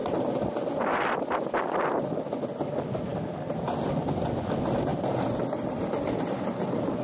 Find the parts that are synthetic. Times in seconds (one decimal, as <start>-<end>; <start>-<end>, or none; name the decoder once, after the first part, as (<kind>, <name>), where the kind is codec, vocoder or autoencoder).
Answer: none